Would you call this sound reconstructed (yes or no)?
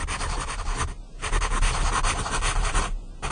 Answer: no